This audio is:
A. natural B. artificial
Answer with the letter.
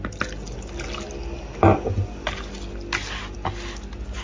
A